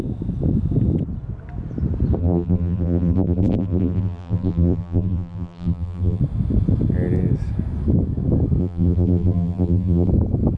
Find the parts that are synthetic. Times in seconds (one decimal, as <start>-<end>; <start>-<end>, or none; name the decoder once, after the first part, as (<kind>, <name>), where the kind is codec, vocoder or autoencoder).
2.2-6.2 (vocoder, BigVGAN v2); 8.6-10.1